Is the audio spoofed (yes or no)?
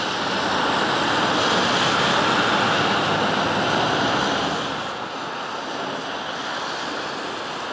no